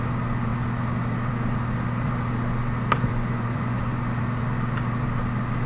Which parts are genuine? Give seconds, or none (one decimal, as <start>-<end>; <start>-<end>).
0.0-3.1; 3.8-5.7